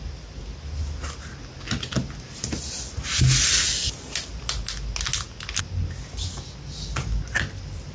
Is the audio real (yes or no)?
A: yes